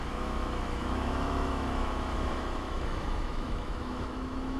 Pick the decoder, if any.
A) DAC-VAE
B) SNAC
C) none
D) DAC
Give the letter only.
A